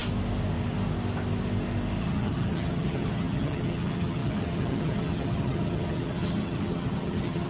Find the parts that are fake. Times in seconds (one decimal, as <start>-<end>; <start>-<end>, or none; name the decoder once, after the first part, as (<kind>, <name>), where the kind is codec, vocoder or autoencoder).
2.0-7.5 (vocoder, HiFi-GAN)